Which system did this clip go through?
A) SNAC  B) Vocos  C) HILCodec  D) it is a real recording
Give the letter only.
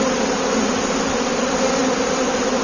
D